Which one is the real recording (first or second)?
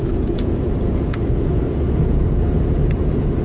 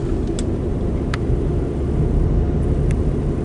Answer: second